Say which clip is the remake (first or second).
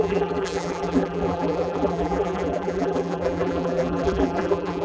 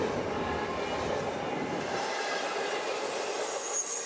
first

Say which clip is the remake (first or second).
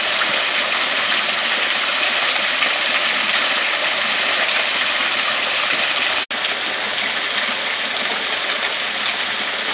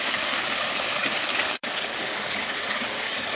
second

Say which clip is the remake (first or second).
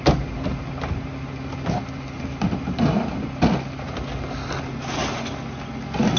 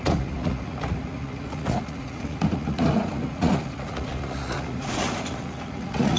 second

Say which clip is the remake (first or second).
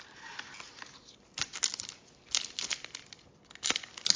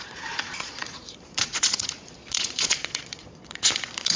second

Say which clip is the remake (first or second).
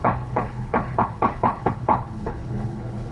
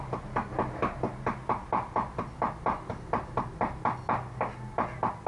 first